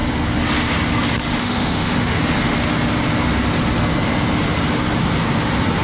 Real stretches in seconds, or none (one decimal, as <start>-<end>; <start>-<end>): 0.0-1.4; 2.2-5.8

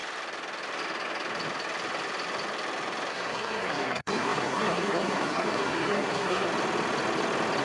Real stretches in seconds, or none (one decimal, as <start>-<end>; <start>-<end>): 0.0-3.1; 6.5-7.6

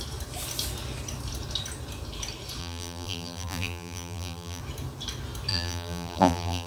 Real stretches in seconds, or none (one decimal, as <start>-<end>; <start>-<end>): 0.0-2.6; 4.6-5.5